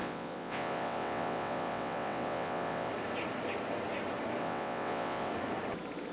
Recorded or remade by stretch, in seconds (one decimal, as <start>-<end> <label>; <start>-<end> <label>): 0.0-2.9 remade; 2.9-4.4 recorded; 4.4-5.3 remade; 5.3-6.1 recorded